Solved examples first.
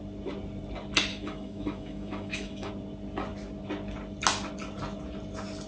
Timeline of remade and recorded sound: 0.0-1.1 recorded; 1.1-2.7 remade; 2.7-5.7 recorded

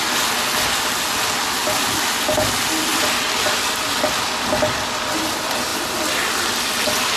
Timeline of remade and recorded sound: 0.0-7.2 recorded